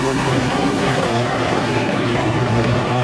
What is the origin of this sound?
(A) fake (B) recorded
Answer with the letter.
A